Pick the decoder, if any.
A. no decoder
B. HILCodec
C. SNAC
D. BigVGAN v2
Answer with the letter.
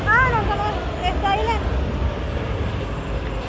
A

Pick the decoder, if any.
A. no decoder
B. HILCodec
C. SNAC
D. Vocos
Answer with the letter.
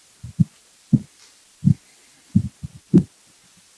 A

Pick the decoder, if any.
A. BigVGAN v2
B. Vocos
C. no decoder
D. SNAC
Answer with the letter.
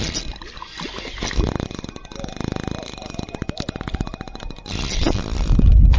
C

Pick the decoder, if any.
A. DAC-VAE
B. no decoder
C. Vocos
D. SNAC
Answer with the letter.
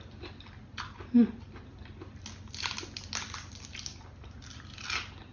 B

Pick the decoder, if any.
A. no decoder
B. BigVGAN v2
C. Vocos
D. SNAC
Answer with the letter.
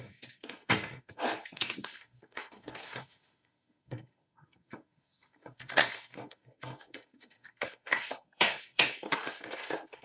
D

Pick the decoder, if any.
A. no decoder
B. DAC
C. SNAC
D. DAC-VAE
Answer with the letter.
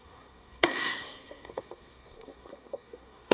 C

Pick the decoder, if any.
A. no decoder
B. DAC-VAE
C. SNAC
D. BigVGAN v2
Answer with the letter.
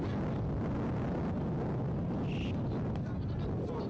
A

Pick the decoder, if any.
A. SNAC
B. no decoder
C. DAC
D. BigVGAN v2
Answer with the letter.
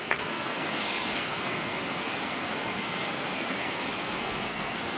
A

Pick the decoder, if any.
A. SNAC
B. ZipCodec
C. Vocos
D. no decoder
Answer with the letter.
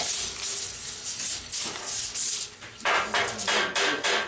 D